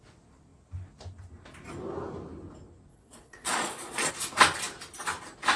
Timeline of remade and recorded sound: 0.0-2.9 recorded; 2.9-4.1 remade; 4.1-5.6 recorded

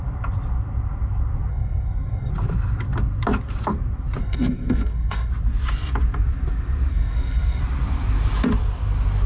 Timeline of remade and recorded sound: 0.0-1.5 recorded; 1.5-2.3 remade; 2.3-4.2 recorded; 4.2-5.3 remade; 5.3-6.9 recorded; 6.9-7.6 remade; 7.6-9.3 recorded

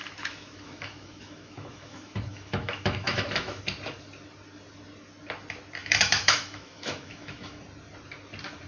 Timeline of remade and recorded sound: 0.0-3.6 remade; 3.6-5.8 recorded; 5.8-7.6 remade; 7.6-8.7 recorded

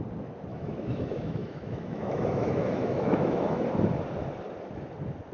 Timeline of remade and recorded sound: 0.0-0.5 recorded; 0.5-3.7 remade; 3.7-5.3 recorded

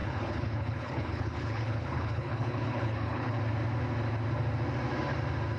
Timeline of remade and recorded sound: 0.0-3.4 remade; 3.4-5.6 recorded